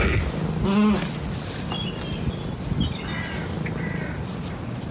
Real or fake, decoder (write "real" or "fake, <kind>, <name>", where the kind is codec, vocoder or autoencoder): real